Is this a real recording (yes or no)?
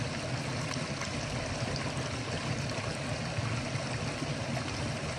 yes